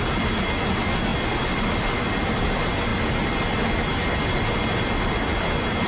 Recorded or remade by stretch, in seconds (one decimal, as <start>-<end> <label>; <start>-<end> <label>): 0.0-5.9 recorded